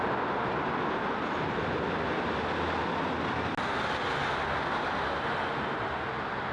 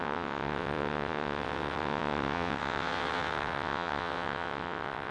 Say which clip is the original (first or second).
first